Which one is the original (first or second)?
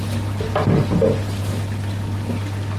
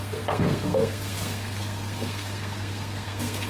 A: first